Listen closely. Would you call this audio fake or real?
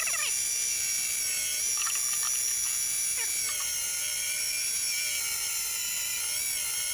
real